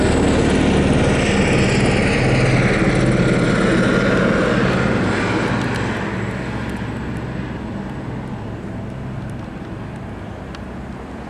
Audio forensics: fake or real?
real